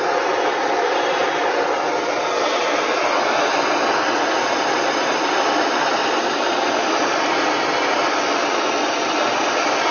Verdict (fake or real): real